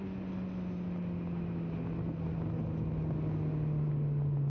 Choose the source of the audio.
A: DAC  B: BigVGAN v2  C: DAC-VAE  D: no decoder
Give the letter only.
D